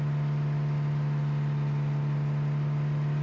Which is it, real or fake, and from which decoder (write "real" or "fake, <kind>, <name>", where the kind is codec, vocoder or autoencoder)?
real